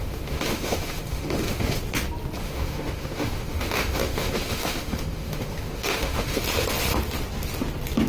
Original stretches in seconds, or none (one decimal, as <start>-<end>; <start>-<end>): 1.8-2.4; 6.4-8.1